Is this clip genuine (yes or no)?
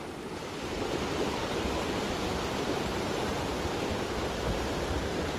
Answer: yes